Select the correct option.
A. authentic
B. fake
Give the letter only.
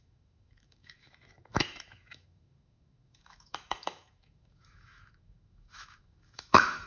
B